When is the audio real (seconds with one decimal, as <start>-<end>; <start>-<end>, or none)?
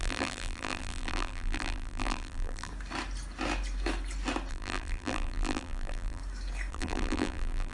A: 2.7-4.5; 6.2-6.7